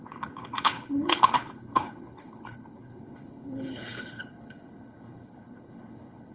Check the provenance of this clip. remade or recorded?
remade